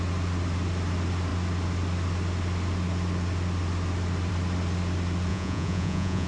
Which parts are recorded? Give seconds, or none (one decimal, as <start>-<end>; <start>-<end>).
0.0-5.3